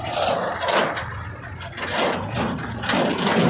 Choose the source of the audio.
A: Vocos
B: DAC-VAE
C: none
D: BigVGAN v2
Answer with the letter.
C